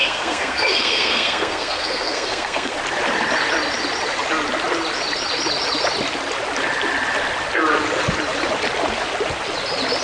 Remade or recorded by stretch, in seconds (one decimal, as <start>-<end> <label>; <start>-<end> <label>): 0.0-2.7 remade; 2.7-10.0 recorded